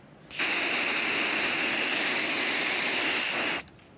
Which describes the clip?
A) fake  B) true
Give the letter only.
B